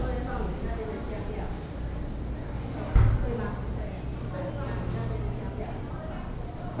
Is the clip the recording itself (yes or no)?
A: yes